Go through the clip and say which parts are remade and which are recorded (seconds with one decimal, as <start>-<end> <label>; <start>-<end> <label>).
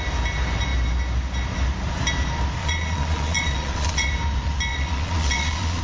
0.0-2.6 recorded; 2.6-4.1 remade; 4.1-4.7 recorded; 4.7-5.8 remade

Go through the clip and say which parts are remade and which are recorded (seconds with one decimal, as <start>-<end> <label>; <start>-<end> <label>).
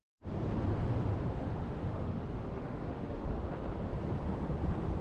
0.0-1.4 recorded; 1.4-3.4 remade; 3.4-5.0 recorded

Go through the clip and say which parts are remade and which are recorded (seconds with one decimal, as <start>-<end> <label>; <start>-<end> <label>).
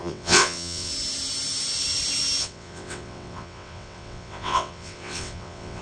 0.0-0.9 remade; 0.9-2.4 recorded; 2.4-5.8 remade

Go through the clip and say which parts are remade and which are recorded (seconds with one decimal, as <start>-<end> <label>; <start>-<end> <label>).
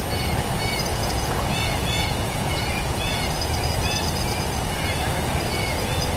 0.0-0.9 recorded; 0.9-3.3 remade; 3.3-6.2 recorded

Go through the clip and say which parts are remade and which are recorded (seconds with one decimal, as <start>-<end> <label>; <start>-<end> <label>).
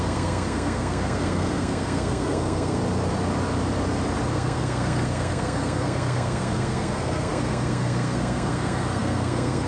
0.0-2.8 remade; 2.8-4.3 recorded; 4.3-9.7 remade